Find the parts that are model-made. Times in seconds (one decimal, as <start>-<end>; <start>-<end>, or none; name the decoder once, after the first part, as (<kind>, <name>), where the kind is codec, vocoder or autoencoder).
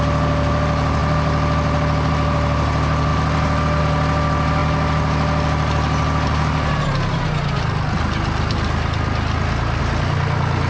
none